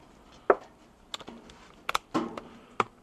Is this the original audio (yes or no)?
yes